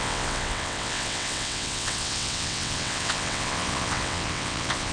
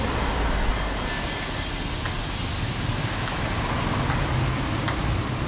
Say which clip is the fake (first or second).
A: first